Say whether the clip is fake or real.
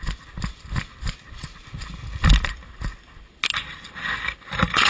real